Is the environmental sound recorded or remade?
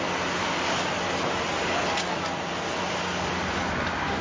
recorded